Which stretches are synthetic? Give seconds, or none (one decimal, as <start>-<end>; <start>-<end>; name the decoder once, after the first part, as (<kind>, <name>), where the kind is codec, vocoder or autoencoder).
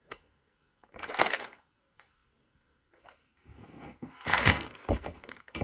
0.0-5.6 (codec, SNAC)